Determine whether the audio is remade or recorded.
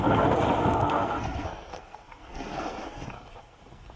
remade